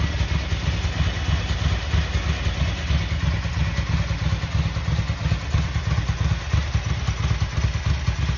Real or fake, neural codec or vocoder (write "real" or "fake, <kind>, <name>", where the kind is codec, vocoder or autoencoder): real